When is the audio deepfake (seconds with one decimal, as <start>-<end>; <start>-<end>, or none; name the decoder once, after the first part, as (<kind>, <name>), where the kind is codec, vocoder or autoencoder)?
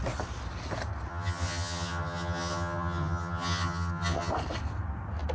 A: 1.1-4.3 (vocoder, HiFi-GAN)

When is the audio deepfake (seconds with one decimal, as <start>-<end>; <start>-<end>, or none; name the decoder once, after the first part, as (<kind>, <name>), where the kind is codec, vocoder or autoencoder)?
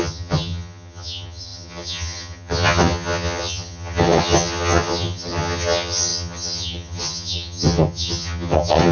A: 0.0-8.9 (vocoder, HiFi-GAN)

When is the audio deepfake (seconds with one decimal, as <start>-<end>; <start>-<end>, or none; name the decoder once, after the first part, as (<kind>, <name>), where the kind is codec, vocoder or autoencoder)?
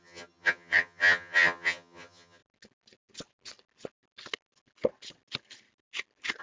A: 0.0-2.4 (vocoder, HiFi-GAN)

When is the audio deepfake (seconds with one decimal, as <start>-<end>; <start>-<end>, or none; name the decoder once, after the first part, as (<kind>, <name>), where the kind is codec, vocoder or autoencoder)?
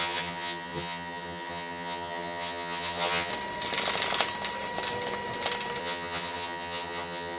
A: 0.0-3.3 (vocoder, HiFi-GAN); 5.8-7.4